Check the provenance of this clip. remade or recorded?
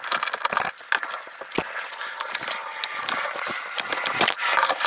recorded